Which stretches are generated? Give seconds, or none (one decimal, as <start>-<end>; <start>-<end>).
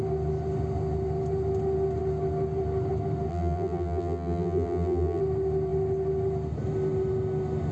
3.3-5.2